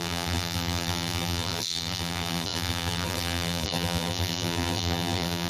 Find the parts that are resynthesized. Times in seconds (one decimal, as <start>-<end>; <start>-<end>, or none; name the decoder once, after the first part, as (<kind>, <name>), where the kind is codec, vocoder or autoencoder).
0.0-5.5 (vocoder, BigVGAN v2)